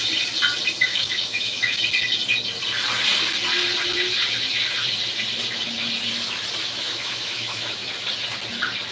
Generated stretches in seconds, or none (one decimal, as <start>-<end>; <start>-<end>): 0.9-1.8; 6.6-7.9